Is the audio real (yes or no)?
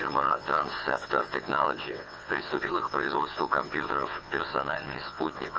no